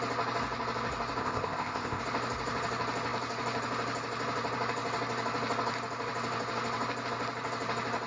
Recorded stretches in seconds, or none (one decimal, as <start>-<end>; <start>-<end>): 0.0-1.2; 2.0-8.1